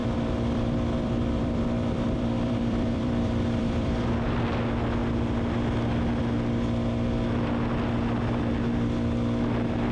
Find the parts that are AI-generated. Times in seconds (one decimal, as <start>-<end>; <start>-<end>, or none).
0.0-4.1